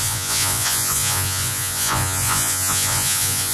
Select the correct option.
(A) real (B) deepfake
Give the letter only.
B